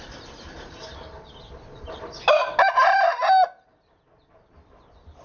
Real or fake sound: real